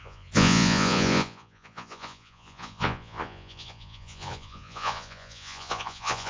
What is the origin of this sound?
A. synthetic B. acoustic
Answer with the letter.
A